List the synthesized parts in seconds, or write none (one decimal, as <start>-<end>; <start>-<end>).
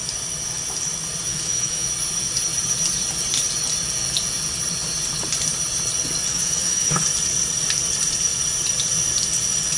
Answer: 1.3-1.9; 6.3-7.0